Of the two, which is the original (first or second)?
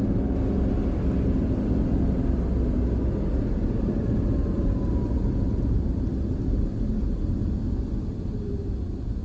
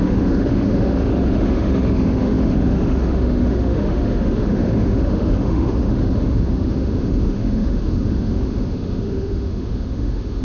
first